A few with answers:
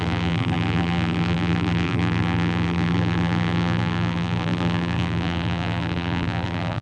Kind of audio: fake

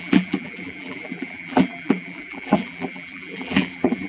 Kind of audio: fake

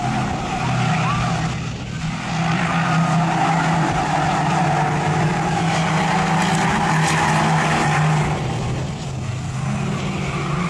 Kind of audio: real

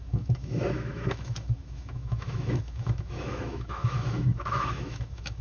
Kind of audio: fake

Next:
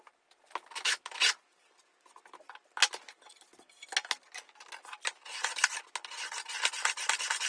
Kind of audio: real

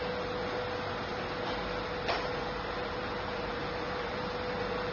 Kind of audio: real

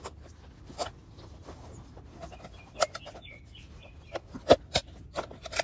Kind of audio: real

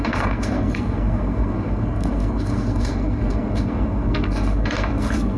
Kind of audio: fake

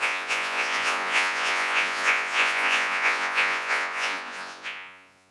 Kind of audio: fake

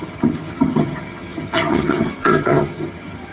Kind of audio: fake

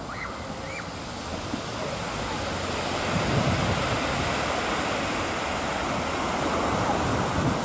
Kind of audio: real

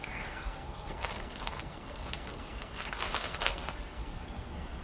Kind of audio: fake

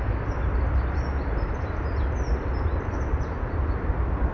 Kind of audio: fake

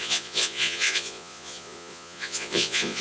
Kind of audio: fake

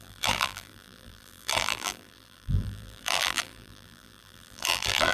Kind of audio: fake